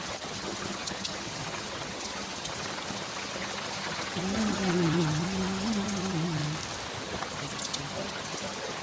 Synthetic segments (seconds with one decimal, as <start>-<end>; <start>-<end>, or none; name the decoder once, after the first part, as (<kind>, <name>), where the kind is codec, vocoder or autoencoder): 0.0-6.4 (vocoder, HiFi-GAN); 7.0-8.8